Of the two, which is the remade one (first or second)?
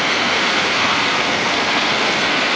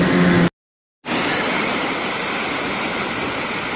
first